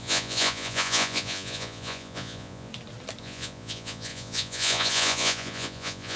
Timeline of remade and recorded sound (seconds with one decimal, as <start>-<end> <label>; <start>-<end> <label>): 0.0-2.7 remade; 2.7-3.2 recorded; 3.2-6.2 remade